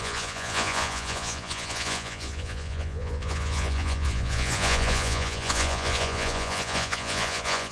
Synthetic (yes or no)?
yes